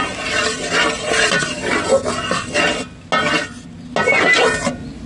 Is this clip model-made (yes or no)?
no